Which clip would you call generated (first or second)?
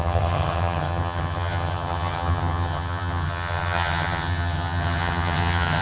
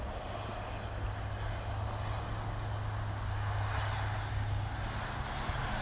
first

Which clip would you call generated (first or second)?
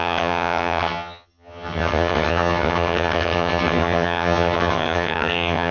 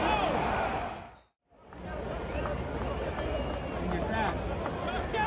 first